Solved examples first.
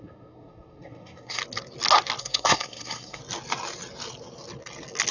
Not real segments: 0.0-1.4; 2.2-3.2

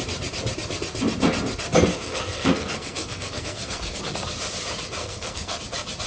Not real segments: 1.9-4.0; 5.0-5.6

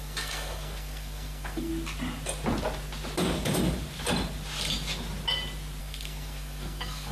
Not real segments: 0.0-1.7; 5.8-7.1

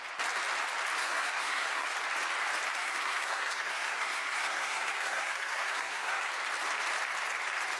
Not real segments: 1.0-1.9; 2.8-6.3

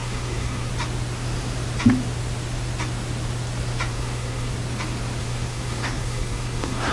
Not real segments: 0.0-0.7; 3.9-4.5; 5.2-6.9